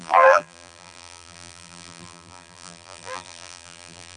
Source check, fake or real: fake